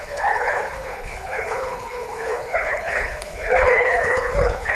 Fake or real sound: fake